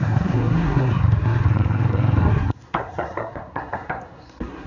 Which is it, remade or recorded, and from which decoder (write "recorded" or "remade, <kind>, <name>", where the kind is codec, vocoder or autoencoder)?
remade, codec, SNAC